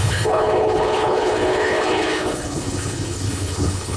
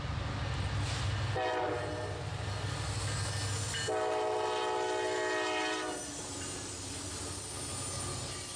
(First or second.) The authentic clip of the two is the second